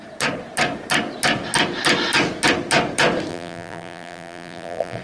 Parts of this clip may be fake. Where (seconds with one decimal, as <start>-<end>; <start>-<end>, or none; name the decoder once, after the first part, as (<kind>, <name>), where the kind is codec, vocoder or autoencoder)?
3.3-5.0 (vocoder, BigVGAN v2)